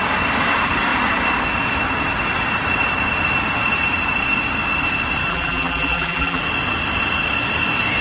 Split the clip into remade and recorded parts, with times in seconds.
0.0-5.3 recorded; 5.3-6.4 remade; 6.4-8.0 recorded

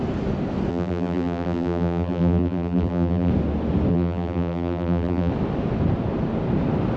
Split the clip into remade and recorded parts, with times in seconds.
0.0-0.7 recorded; 0.7-3.3 remade; 3.3-3.9 recorded; 3.9-5.3 remade; 5.3-7.0 recorded

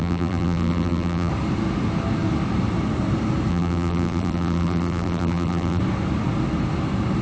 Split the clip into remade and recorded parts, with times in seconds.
0.0-1.3 remade; 1.3-3.5 recorded; 3.5-5.8 remade; 5.8-7.2 recorded

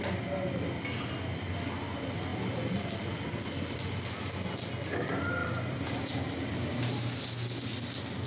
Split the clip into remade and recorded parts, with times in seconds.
0.0-5.4 recorded; 5.4-7.2 remade; 7.2-8.3 recorded